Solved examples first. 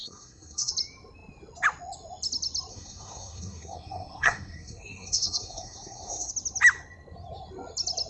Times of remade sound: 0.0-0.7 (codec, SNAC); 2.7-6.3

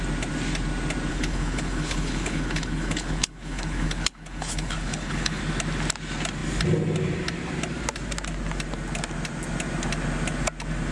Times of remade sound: 1.1-5.4 (codec, HILCodec)

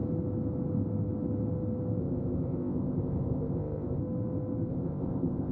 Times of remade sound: 2.0-4.0 (codec, ZipCodec); 4.7-5.5

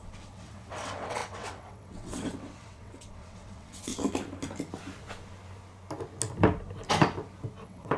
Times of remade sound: 0.0-3.9 (vocoder, WaveNeXt); 7.6-8.0

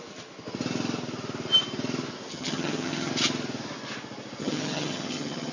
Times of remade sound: 2.3-3.1 (vocoder, HiFi-GAN); 4.4-5.5

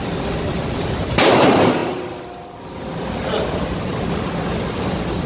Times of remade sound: none

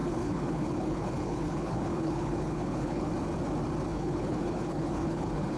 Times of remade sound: 0.0-3.1 (codec, HILCodec); 3.9-5.6

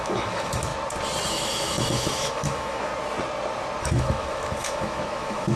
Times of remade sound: 0.0-0.7 (autoencoder, DAC-VAE); 1.3-2.9; 3.8-5.6